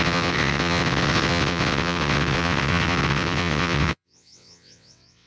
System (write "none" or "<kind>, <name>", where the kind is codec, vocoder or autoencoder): vocoder, WaveNeXt